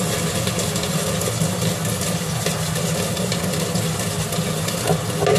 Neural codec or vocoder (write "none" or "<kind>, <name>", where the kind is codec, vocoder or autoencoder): none